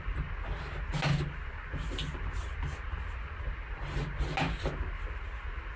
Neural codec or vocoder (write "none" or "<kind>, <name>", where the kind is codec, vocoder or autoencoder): none